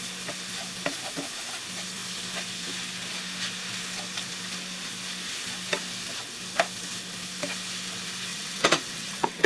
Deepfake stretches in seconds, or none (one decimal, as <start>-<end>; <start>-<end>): 8.3-9.5